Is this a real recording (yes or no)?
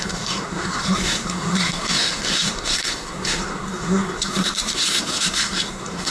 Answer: no